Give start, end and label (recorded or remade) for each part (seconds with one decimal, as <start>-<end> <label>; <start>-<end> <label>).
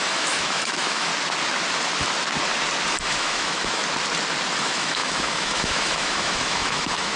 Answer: 0.0-1.1 remade; 1.1-2.9 recorded; 2.9-3.8 remade; 3.8-4.6 recorded; 4.6-7.2 remade